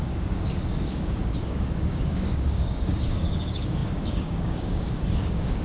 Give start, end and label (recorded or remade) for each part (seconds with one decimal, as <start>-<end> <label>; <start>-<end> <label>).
0.0-5.6 remade